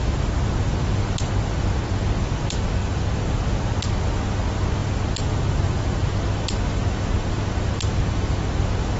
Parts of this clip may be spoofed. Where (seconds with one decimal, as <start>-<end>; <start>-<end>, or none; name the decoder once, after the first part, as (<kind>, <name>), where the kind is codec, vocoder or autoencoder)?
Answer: 2.8-3.4 (vocoder, BigVGAN v2)